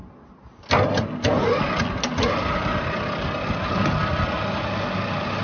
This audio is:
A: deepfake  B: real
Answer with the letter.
B